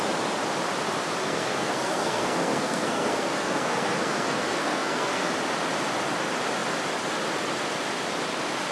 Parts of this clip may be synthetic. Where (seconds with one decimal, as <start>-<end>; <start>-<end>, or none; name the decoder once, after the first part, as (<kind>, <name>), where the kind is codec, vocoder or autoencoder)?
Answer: 1.2-5.3 (codec, SNAC)